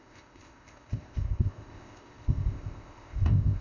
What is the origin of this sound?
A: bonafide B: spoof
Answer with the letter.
B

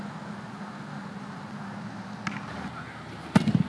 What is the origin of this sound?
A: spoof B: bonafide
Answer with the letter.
B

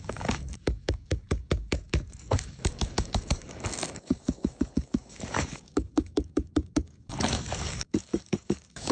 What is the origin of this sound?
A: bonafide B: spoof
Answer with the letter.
B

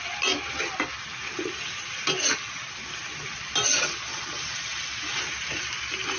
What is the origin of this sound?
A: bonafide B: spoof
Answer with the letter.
A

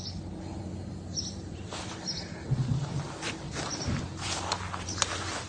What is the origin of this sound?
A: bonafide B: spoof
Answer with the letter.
A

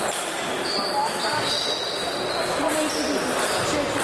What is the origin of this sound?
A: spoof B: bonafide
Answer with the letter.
B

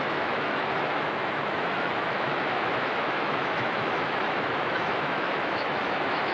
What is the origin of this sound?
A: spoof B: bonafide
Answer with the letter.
A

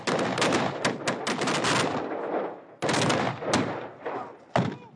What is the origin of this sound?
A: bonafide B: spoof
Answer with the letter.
A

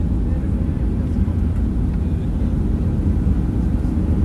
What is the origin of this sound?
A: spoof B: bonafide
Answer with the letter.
B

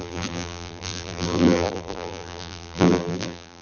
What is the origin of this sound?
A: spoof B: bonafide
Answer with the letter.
A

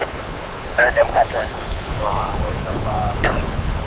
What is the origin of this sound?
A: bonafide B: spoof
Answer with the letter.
B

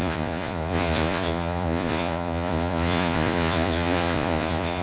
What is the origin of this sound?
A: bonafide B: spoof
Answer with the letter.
B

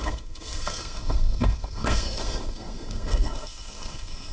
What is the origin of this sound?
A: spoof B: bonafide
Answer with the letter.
A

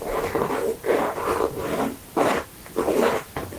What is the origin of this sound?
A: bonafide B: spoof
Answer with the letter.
B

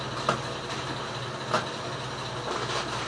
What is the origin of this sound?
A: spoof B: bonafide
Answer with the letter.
B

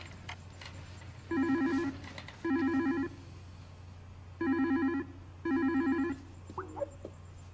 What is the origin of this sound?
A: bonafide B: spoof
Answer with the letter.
A